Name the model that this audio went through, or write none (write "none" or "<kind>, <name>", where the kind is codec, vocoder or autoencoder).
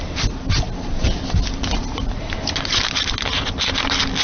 none